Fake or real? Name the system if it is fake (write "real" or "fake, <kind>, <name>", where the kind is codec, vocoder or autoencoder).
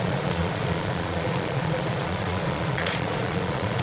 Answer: fake, vocoder, Vocos